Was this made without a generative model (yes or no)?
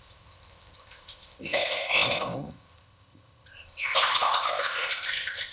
no